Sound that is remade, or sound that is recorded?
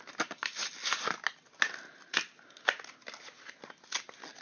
recorded